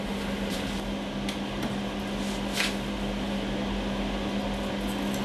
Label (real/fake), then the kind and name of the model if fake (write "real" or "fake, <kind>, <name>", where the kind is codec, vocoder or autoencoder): real